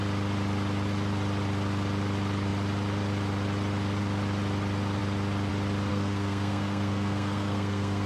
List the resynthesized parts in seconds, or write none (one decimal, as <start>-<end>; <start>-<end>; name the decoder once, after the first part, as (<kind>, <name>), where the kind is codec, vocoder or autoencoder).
5.9-8.1 (codec, SNAC)